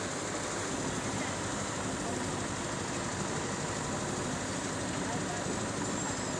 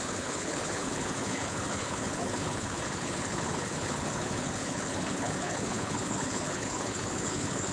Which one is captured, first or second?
first